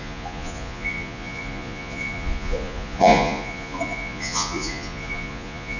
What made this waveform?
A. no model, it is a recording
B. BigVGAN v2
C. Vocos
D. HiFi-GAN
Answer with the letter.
C